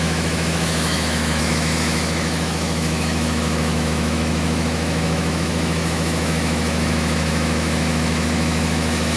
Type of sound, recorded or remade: remade